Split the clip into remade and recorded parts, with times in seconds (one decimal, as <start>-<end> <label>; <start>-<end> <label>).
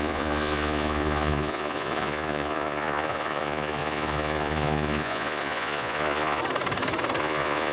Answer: 0.0-6.4 remade; 6.4-7.2 recorded; 7.2-7.7 remade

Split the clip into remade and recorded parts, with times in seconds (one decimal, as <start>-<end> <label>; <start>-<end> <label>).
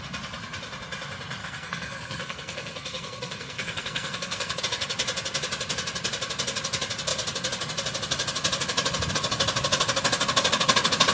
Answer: 0.0-1.4 recorded; 1.4-4.6 remade; 4.6-11.1 recorded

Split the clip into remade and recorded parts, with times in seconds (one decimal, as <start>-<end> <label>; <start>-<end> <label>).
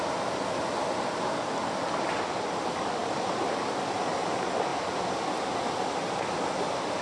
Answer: 0.0-7.0 recorded